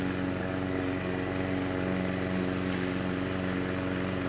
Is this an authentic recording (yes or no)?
yes